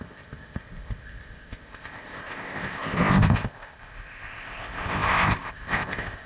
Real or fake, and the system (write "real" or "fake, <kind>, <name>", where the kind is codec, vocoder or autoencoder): fake, codec, ZipCodec